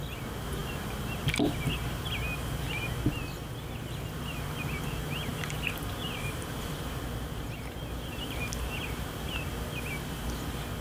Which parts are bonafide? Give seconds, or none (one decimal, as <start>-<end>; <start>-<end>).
0.0-5.3; 8.7-10.8